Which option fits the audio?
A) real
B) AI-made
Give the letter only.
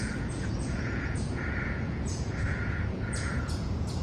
B